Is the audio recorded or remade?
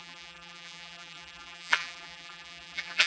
remade